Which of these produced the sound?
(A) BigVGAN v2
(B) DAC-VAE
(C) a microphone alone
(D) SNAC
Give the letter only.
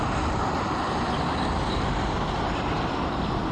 C